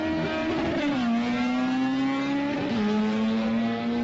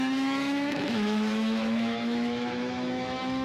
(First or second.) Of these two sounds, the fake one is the second